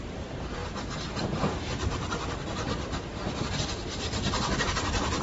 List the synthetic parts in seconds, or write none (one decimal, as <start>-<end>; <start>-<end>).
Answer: none